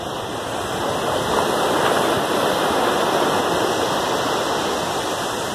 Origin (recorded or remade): recorded